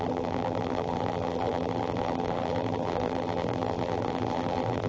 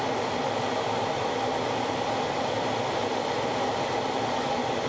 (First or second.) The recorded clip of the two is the second